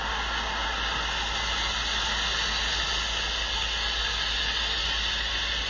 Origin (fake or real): real